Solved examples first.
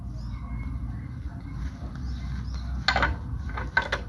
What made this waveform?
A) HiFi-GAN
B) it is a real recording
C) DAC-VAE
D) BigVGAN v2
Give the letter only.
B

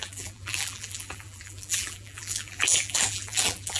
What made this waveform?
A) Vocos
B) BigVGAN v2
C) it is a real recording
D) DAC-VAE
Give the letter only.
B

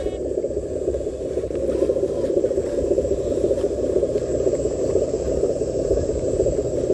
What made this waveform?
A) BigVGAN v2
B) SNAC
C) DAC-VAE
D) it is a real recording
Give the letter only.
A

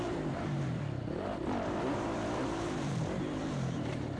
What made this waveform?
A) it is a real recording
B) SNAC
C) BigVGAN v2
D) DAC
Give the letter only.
C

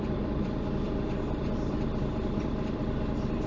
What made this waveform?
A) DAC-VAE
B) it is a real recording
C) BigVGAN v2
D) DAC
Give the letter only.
C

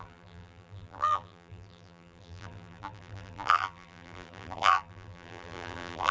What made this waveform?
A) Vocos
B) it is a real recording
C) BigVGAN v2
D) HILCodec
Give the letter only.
C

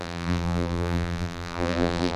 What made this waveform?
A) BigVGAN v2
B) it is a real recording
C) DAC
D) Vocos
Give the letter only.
A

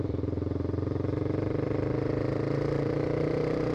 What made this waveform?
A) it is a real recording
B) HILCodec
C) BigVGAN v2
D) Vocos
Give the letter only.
C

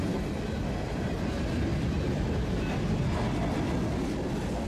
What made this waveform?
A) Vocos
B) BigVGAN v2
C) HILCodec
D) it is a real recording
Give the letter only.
D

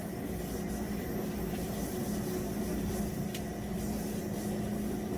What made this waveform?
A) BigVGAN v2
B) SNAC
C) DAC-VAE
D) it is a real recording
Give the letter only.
D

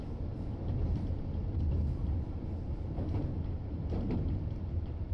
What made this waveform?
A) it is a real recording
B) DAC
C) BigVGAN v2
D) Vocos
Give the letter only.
C